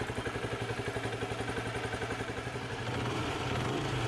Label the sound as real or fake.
real